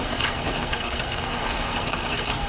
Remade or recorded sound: remade